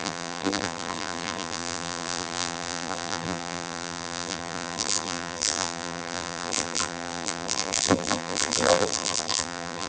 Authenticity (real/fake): fake